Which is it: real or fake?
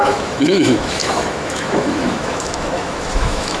fake